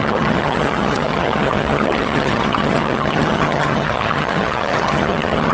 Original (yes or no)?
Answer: no